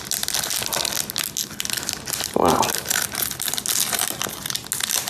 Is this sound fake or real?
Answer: real